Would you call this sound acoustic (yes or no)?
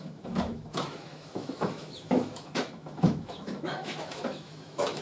no